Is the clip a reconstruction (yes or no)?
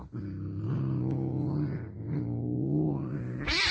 no